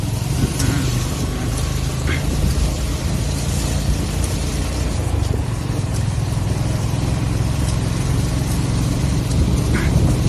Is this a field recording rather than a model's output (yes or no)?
no